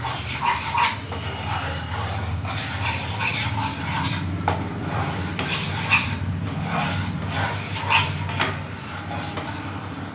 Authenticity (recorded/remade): recorded